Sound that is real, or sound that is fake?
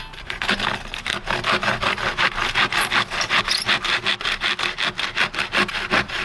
real